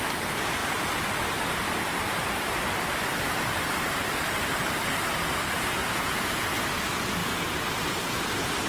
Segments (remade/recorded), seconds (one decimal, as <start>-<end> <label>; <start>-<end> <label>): 0.0-5.8 recorded; 5.8-6.4 remade; 6.4-7.2 recorded; 7.2-7.7 remade; 7.7-8.7 recorded